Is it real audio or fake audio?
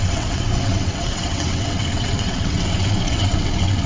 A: fake